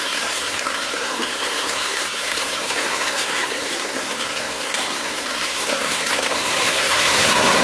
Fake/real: fake